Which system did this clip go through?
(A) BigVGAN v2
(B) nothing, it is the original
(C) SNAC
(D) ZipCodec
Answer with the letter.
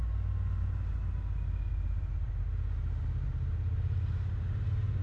B